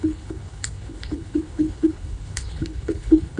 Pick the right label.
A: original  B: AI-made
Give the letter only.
B